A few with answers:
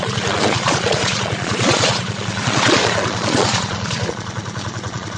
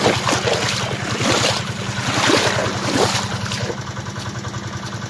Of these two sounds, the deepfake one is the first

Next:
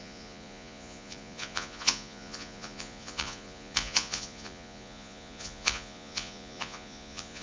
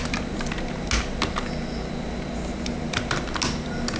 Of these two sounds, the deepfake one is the first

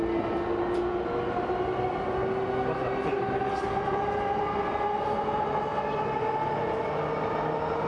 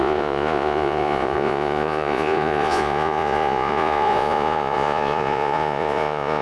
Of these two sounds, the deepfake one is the second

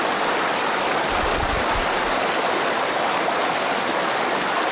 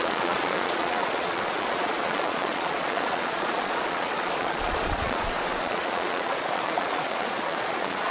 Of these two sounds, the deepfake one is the second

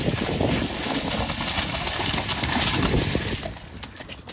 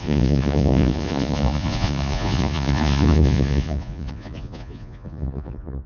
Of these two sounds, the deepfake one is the second